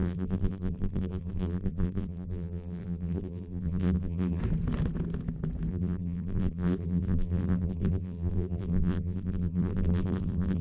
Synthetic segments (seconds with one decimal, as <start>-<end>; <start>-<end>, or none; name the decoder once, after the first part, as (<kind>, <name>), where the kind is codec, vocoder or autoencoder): 0.0-4.4 (vocoder, BigVGAN v2); 5.7-10.6